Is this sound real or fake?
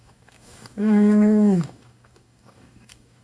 fake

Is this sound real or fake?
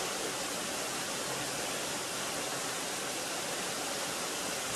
real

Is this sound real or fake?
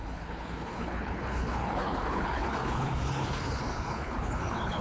fake